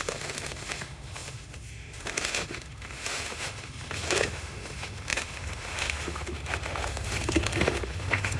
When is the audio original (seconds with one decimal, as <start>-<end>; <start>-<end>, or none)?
none